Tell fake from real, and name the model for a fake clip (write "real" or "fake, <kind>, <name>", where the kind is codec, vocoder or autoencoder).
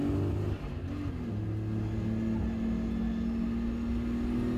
real